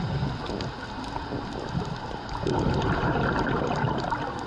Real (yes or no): yes